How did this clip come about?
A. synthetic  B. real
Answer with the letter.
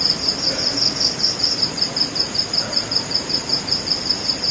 B